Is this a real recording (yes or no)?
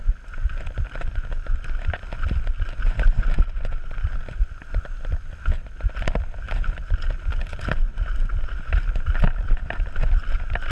yes